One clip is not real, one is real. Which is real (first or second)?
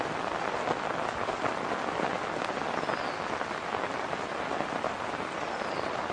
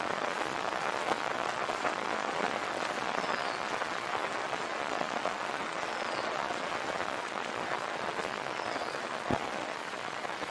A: first